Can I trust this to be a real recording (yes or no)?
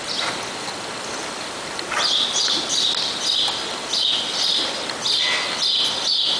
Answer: yes